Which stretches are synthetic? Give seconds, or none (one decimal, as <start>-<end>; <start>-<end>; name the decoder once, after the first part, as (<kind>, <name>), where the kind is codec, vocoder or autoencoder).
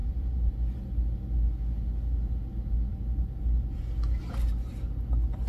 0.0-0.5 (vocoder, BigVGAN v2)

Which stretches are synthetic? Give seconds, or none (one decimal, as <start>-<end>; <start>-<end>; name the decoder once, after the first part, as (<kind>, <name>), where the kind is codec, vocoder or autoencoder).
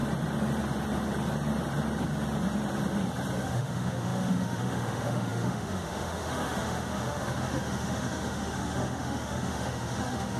3.4-10.4 (autoencoder, DAC-VAE)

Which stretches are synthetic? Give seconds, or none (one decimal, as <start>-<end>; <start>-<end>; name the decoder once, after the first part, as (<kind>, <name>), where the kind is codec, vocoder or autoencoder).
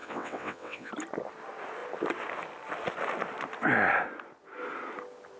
0.0-0.9 (vocoder, WaveNeXt)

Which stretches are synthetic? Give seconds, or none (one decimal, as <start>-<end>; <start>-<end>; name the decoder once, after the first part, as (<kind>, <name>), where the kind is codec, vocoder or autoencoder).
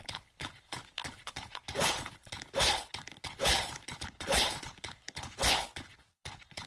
0.0-6.7 (codec, HILCodec)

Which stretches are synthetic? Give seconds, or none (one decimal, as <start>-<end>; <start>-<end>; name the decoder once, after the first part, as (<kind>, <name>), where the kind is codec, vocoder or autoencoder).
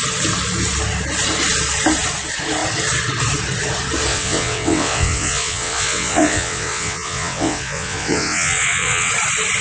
4.1-9.1 (vocoder, WaveNeXt)